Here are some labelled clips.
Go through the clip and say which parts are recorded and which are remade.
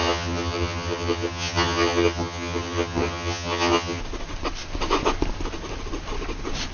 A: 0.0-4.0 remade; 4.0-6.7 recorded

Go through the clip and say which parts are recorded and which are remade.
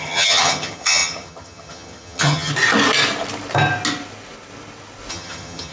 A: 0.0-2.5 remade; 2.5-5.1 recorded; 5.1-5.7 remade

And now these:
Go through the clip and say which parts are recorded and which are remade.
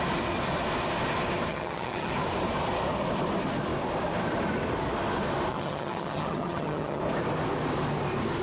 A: 0.0-1.5 recorded; 1.5-2.1 remade; 2.1-5.5 recorded; 5.5-7.0 remade; 7.0-8.4 recorded